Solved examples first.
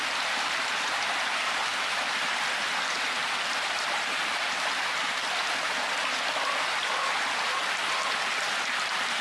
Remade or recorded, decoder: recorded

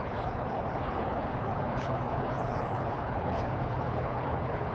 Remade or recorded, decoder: remade, codec, HILCodec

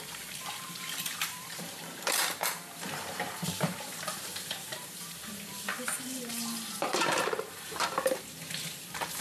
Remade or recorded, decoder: remade, vocoder, BigVGAN v2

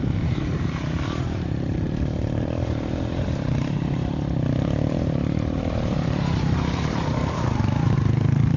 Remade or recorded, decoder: remade, vocoder, BigVGAN v2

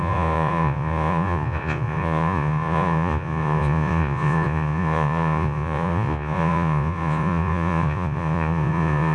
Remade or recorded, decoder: remade, vocoder, Vocos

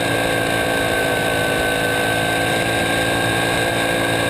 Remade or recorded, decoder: recorded